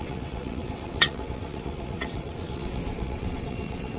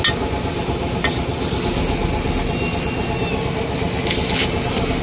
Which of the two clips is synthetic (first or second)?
first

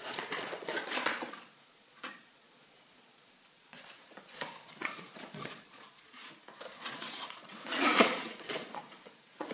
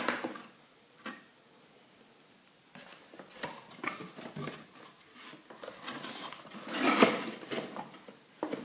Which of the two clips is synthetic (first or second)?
first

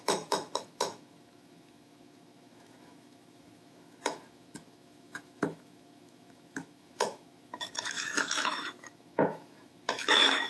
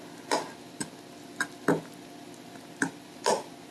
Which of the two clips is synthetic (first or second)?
first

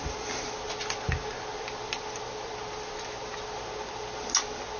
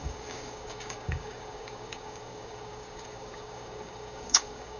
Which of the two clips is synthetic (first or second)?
second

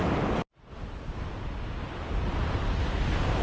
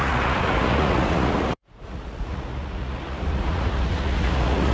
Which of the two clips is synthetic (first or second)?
second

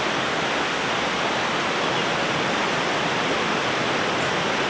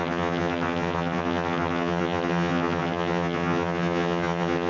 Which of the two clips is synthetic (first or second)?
second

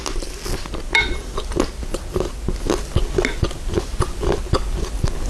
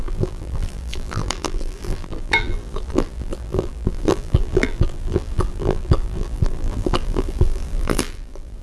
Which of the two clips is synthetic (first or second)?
second